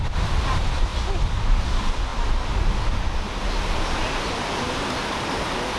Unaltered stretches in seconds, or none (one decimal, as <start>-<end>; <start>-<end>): 0.0-5.8